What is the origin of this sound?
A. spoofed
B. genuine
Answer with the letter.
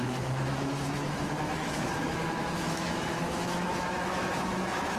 A